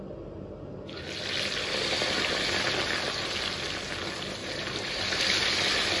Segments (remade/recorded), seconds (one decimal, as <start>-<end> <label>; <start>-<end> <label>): 0.0-4.4 recorded; 4.4-5.0 remade; 5.0-6.0 recorded